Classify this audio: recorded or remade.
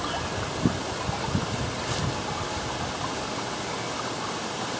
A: recorded